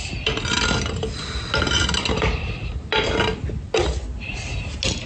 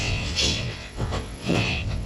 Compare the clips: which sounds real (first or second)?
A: first